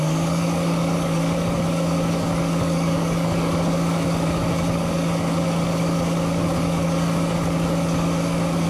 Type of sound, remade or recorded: remade